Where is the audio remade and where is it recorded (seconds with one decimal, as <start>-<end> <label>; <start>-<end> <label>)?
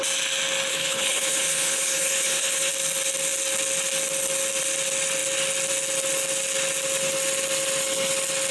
0.0-0.7 recorded; 0.7-2.7 remade; 2.7-8.5 recorded